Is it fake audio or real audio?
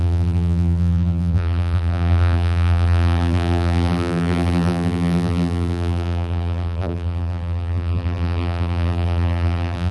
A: fake